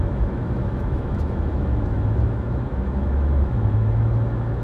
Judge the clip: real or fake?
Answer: fake